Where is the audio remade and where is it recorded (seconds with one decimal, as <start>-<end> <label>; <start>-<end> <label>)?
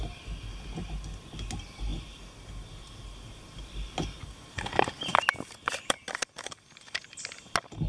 0.0-7.9 recorded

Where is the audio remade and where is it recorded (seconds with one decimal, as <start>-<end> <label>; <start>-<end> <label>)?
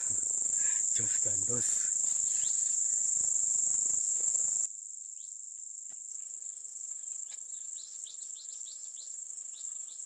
0.0-4.0 recorded; 4.0-4.4 remade; 4.4-6.1 recorded; 6.1-10.1 remade